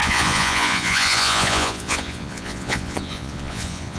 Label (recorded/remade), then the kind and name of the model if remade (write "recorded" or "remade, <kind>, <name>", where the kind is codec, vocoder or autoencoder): remade, vocoder, Vocos